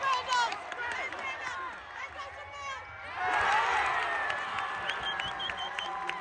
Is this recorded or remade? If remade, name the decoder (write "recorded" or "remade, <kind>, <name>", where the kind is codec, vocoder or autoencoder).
recorded